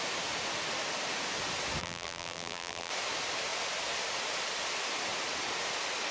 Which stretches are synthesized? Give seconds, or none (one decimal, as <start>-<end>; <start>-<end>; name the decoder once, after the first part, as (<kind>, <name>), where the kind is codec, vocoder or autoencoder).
1.8-2.9 (vocoder, BigVGAN v2)